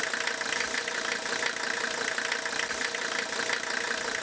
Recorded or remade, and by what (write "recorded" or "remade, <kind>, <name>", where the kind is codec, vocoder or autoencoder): recorded